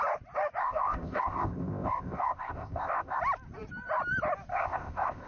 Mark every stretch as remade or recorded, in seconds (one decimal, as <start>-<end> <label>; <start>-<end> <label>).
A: 0.0-0.6 recorded; 0.6-3.2 remade; 3.2-4.5 recorded; 4.5-5.3 remade